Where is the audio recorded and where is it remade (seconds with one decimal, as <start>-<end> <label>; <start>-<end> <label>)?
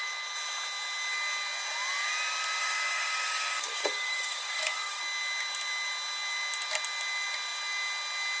0.0-2.6 recorded; 2.6-5.0 remade; 5.0-8.4 recorded